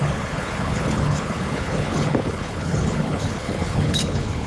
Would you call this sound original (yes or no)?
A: no